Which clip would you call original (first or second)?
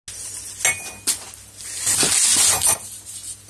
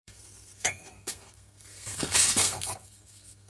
first